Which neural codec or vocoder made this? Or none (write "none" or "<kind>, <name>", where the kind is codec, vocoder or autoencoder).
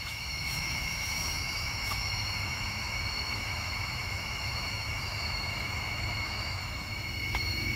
autoencoder, DAC-VAE